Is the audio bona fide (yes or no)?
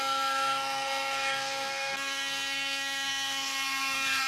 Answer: no